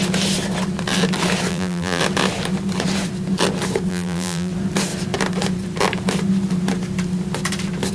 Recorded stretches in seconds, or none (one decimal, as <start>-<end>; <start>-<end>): 0.0-1.5; 2.0-3.9; 4.5-7.9